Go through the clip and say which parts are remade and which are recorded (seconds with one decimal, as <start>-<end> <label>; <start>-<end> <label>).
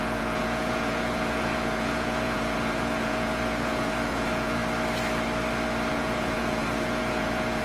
0.0-4.6 remade; 4.6-5.9 recorded; 5.9-7.6 remade